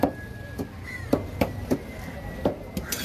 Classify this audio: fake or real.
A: real